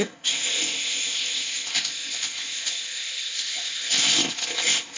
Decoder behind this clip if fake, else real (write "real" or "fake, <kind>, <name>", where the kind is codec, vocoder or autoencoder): fake, codec, ZipCodec